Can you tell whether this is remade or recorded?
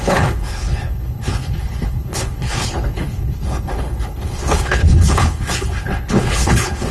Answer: remade